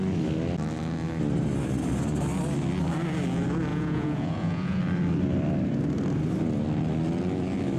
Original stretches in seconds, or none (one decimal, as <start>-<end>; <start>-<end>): 0.0-3.7; 4.8-7.8